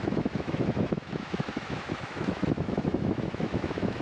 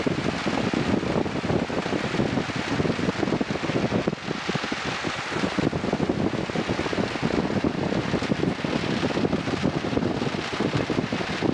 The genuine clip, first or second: second